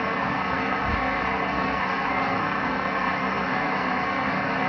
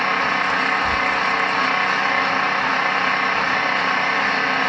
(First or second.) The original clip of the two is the second